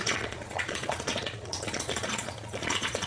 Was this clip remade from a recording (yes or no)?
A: yes